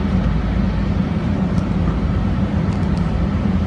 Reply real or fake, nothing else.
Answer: real